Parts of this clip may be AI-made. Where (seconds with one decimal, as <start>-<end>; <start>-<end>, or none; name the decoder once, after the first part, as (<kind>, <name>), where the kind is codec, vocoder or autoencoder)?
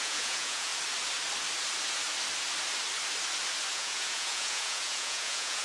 0.0-0.7 (vocoder, Vocos); 3.7-5.6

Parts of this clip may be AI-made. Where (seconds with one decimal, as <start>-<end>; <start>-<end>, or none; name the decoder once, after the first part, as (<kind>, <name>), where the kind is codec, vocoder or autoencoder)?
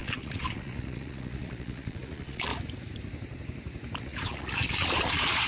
0.0-2.5 (vocoder, Vocos); 4.0-5.5